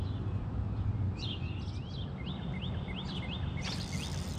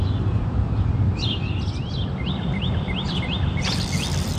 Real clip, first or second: first